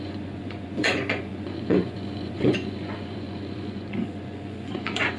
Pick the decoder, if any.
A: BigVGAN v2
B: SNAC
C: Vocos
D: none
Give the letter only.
C